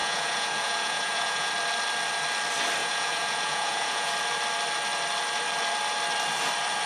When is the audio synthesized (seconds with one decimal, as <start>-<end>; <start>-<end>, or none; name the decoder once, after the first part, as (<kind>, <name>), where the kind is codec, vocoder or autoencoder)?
0.0-1.5 (vocoder, Vocos); 2.8-4.1

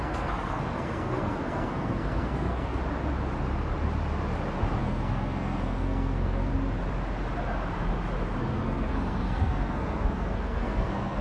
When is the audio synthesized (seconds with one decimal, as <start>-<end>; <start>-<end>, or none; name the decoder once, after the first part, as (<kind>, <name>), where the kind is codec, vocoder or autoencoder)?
0.0-2.8 (codec, SNAC); 4.8-6.5; 8.4-11.2

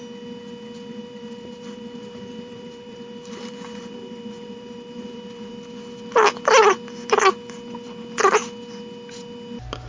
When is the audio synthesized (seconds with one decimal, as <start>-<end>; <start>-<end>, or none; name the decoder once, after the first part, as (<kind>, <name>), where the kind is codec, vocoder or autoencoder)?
0.9-5.5 (vocoder, BigVGAN v2)

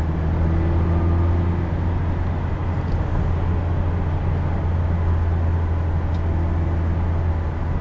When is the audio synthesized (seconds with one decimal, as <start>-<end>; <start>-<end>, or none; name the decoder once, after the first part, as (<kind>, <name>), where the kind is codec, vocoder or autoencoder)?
none

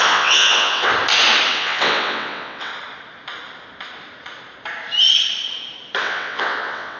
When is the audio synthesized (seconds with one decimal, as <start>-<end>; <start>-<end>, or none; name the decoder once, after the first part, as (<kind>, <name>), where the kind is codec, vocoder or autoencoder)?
0.0-0.9 (vocoder, WaveNeXt); 1.5-2.7; 6.0-7.0